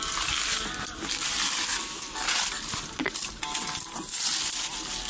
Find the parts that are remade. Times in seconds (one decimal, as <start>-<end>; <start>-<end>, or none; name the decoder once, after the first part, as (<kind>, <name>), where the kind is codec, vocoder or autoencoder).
none